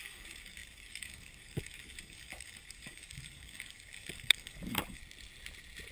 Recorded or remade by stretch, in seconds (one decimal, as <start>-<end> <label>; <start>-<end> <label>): 0.0-5.0 remade; 5.0-5.9 recorded